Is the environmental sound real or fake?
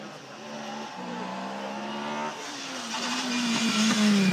real